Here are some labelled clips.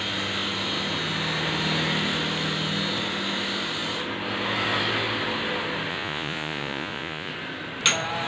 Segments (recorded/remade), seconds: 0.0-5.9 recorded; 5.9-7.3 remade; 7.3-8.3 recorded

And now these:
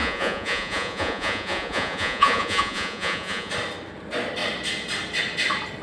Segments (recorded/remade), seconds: 0.0-3.5 remade; 3.5-5.8 recorded

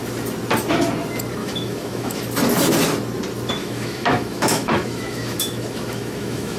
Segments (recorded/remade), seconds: 0.0-1.4 recorded; 1.4-2.2 remade; 2.2-3.6 recorded; 3.6-6.6 remade

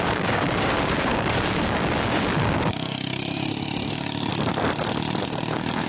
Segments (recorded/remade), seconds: 0.0-4.3 remade; 4.3-5.2 recorded; 5.2-5.9 remade

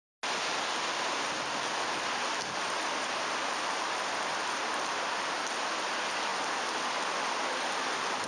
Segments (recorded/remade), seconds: 0.0-3.4 recorded; 3.4-5.1 remade; 5.1-8.3 recorded

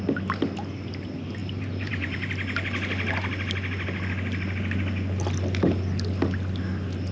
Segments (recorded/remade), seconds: 0.0-1.4 recorded; 1.4-2.3 remade; 2.3-7.1 recorded